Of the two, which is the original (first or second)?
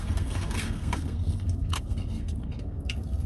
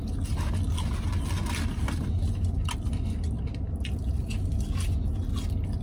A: second